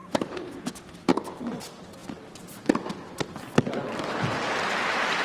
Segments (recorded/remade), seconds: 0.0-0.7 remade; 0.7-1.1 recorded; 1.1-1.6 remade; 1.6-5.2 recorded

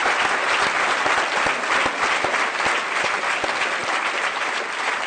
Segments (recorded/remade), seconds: 0.0-5.1 recorded

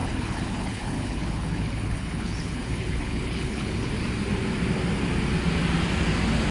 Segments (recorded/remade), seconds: 0.0-3.9 remade; 3.9-6.5 recorded

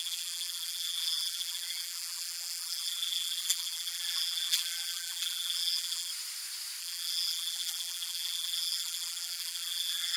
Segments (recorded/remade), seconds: 0.0-6.1 remade; 6.1-6.8 recorded; 6.8-10.2 remade

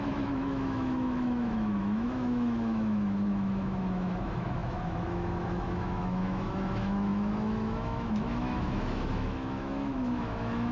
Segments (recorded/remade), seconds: 0.0-10.7 remade

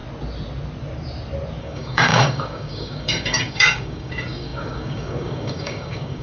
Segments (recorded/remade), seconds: 0.0-1.6 recorded; 1.6-6.2 remade

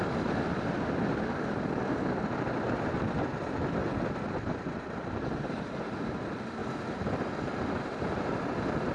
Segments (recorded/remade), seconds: 0.0-8.9 recorded

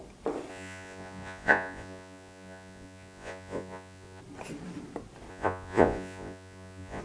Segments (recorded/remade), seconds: 0.0-0.5 recorded; 0.5-4.2 remade; 4.2-5.3 recorded; 5.3-7.0 remade